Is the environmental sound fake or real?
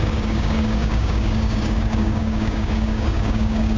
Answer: fake